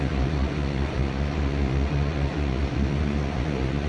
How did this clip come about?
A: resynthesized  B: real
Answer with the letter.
A